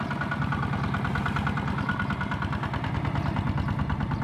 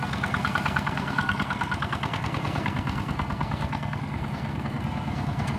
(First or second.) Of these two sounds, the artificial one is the second